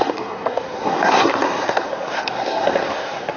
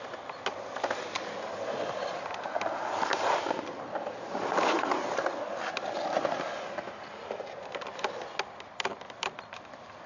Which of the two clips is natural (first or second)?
second